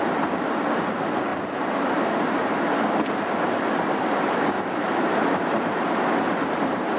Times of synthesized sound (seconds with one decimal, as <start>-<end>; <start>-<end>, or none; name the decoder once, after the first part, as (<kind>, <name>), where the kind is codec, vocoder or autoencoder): none

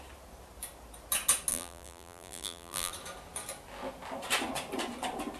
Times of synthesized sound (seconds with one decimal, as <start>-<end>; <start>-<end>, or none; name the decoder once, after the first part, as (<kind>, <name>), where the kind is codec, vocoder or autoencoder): 1.5-2.9 (vocoder, BigVGAN v2)

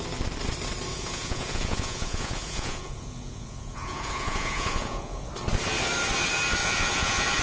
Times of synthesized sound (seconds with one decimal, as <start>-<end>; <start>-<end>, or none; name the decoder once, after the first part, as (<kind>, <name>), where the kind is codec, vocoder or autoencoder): 0.9-5.3 (vocoder, Vocos); 6.6-7.4

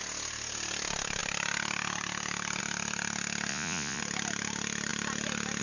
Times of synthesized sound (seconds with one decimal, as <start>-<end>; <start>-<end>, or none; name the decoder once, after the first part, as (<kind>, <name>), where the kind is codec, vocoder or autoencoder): 3.5-4.0 (vocoder, Vocos)